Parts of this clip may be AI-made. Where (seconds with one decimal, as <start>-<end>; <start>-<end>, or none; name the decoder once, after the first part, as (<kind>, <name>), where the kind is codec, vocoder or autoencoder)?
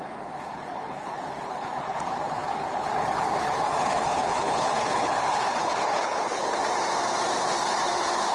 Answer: 0.0-6.6 (codec, HILCodec)